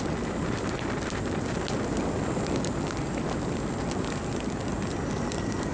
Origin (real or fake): real